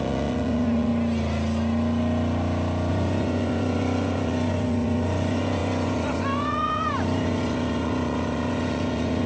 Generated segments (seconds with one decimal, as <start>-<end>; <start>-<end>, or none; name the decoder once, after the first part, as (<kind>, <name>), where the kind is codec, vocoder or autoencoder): 0.0-0.9 (vocoder, Vocos); 2.9-9.3

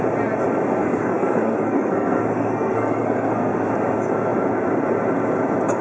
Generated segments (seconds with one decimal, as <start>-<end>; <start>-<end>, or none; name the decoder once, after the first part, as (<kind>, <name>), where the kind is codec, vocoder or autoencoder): 0.8-3.7 (codec, SNAC)

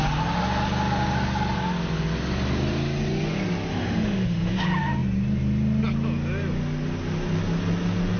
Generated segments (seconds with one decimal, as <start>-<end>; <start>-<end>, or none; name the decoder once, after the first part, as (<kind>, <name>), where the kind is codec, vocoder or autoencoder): 3.7-4.6 (autoencoder, DAC-VAE)

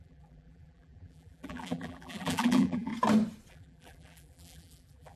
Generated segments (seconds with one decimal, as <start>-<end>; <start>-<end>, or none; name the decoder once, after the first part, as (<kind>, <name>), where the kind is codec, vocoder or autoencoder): 0.0-2.9 (vocoder, BigVGAN v2); 3.5-5.2

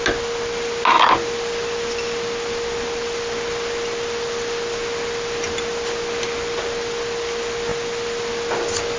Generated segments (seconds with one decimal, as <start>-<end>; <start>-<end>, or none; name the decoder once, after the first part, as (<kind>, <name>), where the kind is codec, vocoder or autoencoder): none

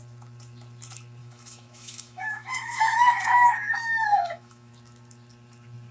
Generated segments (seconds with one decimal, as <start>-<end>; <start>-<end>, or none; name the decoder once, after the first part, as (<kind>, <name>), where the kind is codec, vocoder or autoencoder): 1.2-4.7 (autoencoder, DAC-VAE)

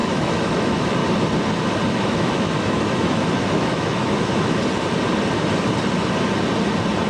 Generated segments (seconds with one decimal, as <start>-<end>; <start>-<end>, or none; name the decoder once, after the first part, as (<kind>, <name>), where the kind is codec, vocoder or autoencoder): 0.0-1.0 (autoencoder, DAC-VAE); 1.9-4.6

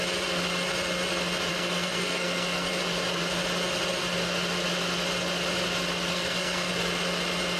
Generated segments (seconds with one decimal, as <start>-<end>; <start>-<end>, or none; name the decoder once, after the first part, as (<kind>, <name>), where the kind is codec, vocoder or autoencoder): 1.5-2.7 (codec, SNAC); 6.1-6.7